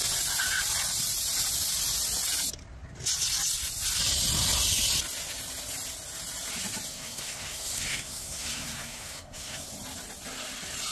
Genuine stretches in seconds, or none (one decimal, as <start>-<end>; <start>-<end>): 0.0-6.9; 9.7-10.9